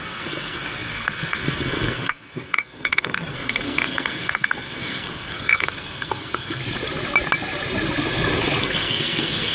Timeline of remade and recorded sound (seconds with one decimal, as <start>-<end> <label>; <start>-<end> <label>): 0.0-6.6 remade; 6.6-8.6 recorded; 8.6-9.5 remade